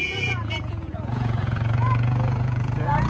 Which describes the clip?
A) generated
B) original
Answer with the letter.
A